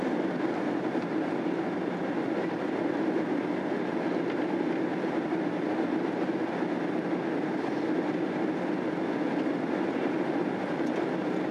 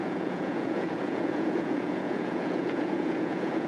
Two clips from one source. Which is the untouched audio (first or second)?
first